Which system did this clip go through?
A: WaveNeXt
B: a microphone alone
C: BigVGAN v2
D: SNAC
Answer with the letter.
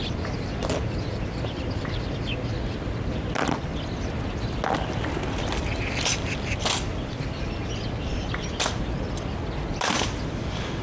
B